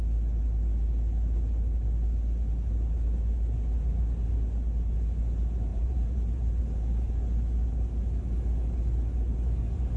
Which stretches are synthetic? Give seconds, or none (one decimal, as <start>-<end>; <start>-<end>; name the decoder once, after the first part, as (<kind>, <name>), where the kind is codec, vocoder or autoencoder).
5.7-6.6 (vocoder, BigVGAN v2)